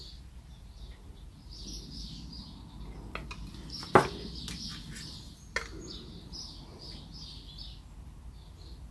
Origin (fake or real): real